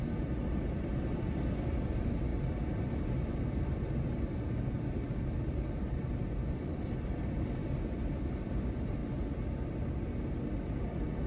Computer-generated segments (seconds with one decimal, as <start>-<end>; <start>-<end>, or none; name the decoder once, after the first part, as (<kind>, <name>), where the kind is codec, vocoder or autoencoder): none